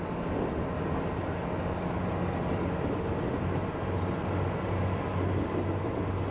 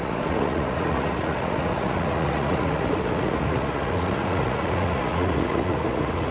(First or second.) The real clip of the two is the first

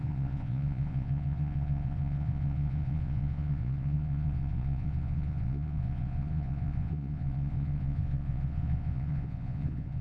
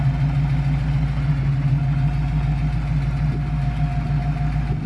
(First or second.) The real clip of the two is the second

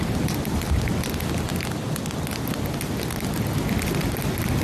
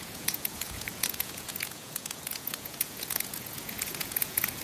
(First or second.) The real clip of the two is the first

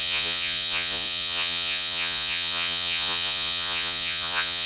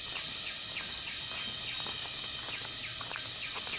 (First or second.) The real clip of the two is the second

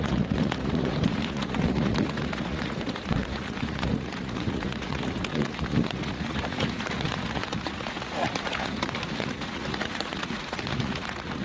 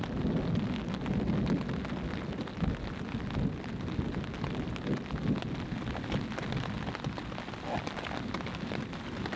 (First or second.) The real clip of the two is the second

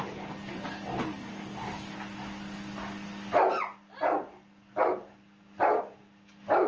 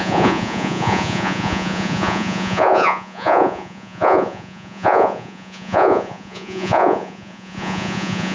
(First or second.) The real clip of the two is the first